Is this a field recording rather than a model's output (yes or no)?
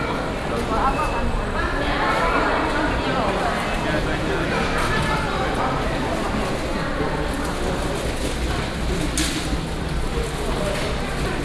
yes